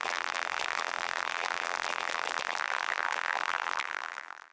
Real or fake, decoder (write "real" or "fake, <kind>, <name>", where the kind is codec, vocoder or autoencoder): fake, vocoder, BigVGAN v2